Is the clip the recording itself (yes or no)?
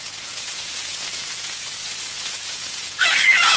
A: no